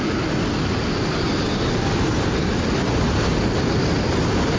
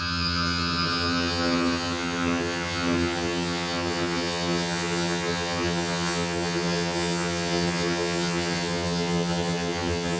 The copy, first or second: second